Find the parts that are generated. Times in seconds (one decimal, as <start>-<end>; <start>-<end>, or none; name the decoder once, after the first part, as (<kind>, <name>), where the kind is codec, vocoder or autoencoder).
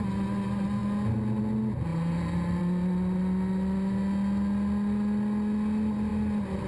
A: none